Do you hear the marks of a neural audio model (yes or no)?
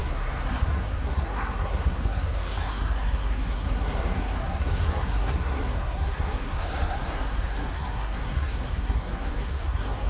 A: yes